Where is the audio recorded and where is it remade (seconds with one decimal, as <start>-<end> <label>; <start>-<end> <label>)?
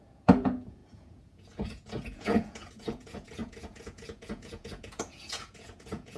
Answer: 0.0-6.2 remade